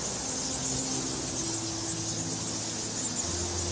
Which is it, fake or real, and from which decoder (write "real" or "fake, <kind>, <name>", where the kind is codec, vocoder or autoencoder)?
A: real